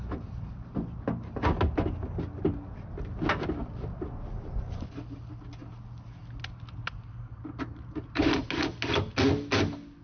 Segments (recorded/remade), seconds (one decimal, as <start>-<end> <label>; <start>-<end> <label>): 0.0-10.0 recorded